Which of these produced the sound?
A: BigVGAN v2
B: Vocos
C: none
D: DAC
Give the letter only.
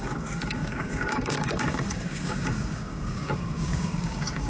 D